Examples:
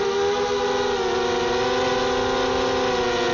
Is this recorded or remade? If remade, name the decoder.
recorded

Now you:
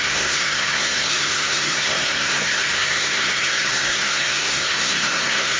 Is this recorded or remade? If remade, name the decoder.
remade, codec, SNAC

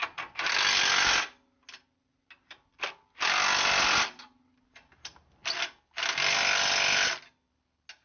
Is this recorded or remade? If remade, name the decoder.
recorded